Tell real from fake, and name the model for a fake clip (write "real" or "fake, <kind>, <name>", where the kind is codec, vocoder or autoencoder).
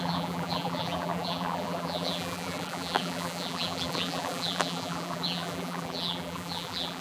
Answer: fake, vocoder, BigVGAN v2